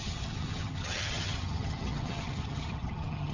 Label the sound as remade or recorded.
remade